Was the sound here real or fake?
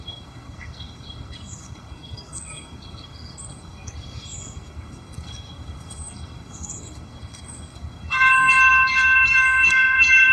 fake